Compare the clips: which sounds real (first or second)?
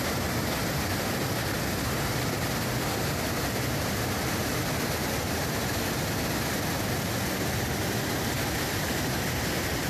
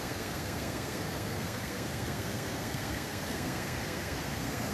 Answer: first